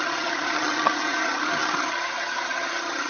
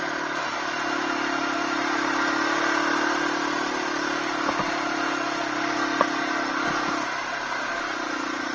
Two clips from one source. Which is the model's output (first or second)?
first